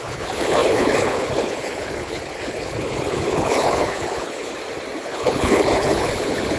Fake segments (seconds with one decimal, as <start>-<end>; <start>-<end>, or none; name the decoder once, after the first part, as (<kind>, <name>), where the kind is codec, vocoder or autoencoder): 0.0-4.5 (codec, HILCodec); 5.0-6.6